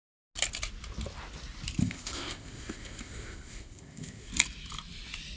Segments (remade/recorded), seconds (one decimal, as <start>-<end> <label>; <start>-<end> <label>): 0.0-1.8 recorded; 1.8-4.3 remade; 4.3-5.4 recorded